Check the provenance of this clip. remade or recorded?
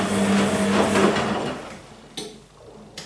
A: recorded